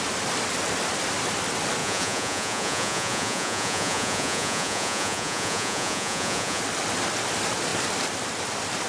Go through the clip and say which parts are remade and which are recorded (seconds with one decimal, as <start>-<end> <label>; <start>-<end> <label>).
0.0-1.8 recorded; 1.8-6.6 remade; 6.6-8.9 recorded